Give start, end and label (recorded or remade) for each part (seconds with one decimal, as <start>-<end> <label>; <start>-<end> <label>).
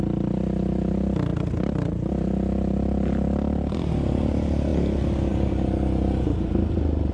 0.0-7.1 recorded